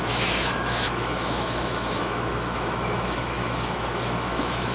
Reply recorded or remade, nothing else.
remade